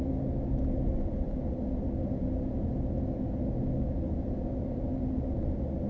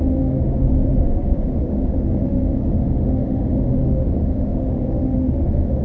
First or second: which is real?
first